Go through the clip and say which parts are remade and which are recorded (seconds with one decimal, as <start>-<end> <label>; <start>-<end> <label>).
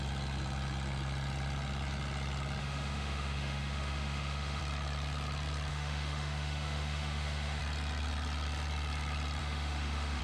0.0-2.6 recorded; 2.6-4.6 remade; 4.6-5.7 recorded; 5.7-7.6 remade; 7.6-9.4 recorded; 9.4-10.2 remade